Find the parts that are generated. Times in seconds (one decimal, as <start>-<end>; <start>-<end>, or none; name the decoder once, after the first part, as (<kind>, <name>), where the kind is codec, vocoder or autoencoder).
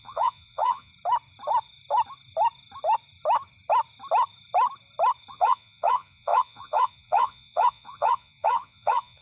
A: 0.0-0.9 (vocoder, Vocos); 5.3-9.2